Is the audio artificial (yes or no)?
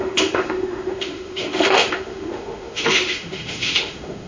yes